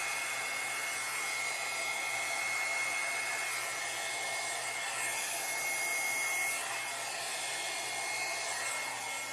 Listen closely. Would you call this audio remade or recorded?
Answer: recorded